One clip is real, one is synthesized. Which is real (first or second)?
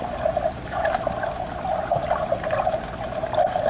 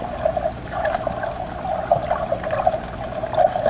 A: second